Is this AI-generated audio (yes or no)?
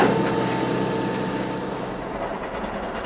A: no